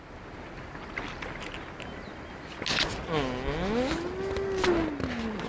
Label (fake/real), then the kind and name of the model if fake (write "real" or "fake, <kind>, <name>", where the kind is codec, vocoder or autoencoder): real